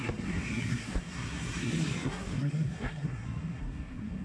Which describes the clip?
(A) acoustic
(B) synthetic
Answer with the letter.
B